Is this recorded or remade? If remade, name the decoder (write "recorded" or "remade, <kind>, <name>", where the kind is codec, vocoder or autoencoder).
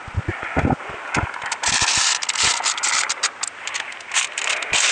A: recorded